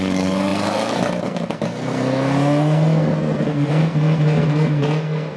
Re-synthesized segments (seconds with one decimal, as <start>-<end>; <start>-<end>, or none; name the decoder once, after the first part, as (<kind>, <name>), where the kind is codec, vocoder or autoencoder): 0.0-5.4 (codec, SNAC)